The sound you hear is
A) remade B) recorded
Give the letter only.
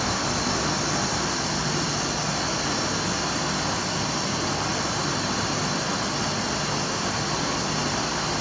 B